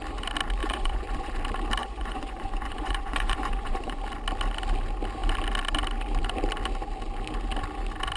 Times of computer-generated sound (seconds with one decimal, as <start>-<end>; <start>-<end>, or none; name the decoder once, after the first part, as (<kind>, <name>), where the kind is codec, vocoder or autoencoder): 0.6-1.3 (vocoder, Vocos); 1.8-4.0